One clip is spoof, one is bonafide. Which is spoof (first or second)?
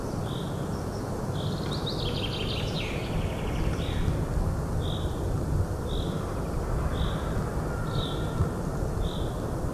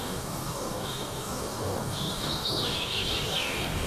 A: second